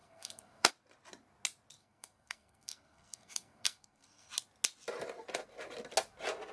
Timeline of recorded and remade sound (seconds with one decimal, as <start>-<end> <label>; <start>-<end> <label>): 0.0-0.7 remade; 0.7-1.8 recorded; 1.8-4.3 remade; 4.3-6.5 recorded